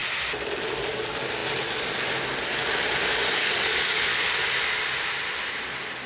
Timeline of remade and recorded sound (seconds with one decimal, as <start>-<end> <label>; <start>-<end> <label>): 0.0-3.4 recorded; 3.4-4.1 remade; 4.1-6.1 recorded